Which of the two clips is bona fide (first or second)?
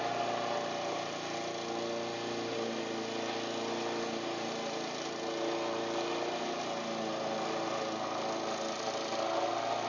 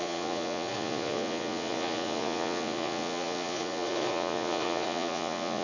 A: first